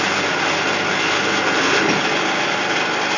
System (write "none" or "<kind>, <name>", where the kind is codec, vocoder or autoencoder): none